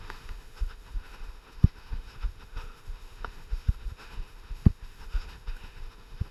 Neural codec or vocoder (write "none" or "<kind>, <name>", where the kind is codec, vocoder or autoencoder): autoencoder, DAC-VAE